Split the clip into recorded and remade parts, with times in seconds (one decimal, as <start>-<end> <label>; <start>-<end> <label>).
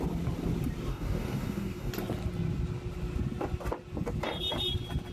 0.0-0.9 recorded; 0.9-1.9 remade; 1.9-5.1 recorded